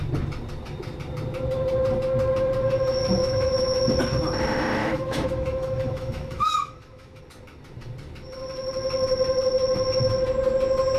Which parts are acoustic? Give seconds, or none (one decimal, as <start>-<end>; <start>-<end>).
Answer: 0.0-3.2; 3.8-4.8; 7.2-11.0